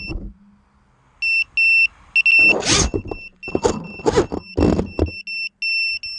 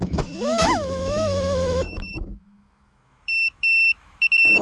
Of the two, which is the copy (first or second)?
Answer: second